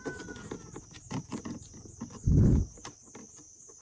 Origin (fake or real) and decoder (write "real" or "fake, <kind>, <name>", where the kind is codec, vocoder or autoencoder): real